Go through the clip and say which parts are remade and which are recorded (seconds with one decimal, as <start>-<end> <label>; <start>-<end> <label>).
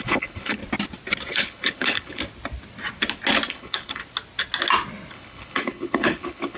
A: 0.0-0.6 remade; 0.6-1.3 recorded; 1.3-2.2 remade; 2.2-3.5 recorded; 3.5-4.0 remade; 4.0-5.1 recorded; 5.1-6.6 remade